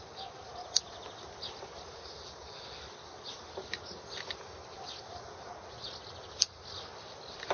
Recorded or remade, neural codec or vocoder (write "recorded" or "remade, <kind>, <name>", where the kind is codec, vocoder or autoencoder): recorded